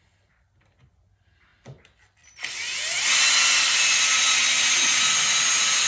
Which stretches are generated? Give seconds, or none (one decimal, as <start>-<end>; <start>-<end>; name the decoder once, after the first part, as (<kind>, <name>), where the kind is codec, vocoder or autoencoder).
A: none